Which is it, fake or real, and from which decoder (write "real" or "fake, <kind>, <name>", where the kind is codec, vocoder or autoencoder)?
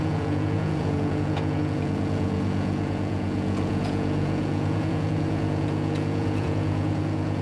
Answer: fake, vocoder, Vocos